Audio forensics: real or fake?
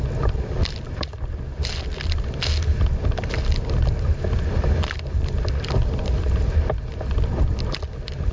real